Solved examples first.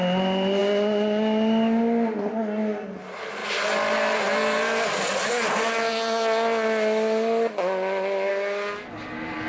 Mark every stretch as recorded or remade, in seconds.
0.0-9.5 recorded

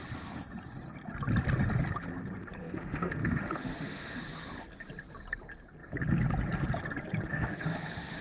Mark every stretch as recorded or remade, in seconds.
0.0-2.6 recorded; 2.6-4.2 remade; 4.2-7.3 recorded; 7.3-8.2 remade